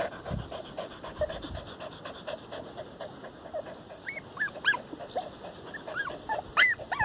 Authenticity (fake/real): real